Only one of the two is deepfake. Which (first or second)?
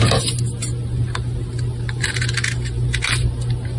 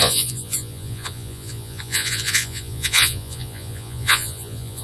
second